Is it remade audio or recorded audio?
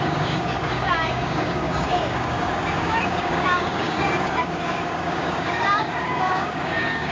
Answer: remade